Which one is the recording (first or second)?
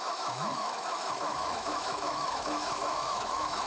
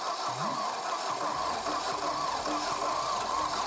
second